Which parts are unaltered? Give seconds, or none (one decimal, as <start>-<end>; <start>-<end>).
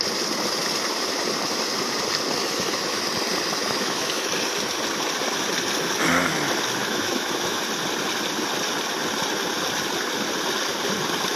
0.0-2.4; 3.1-3.6; 4.3-6.8; 7.6-11.4